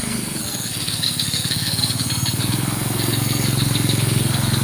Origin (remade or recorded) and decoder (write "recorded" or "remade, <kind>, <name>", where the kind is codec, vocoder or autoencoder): remade, codec, SNAC